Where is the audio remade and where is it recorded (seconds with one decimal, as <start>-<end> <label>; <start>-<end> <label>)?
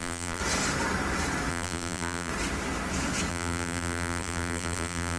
0.0-0.4 remade; 0.4-1.5 recorded; 1.5-2.3 remade; 2.3-3.3 recorded; 3.3-5.2 remade